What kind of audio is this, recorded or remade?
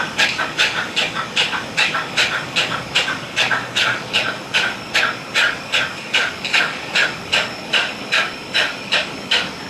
remade